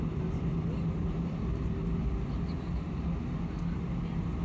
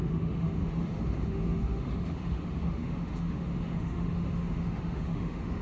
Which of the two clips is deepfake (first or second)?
second